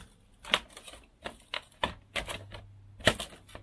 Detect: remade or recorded recorded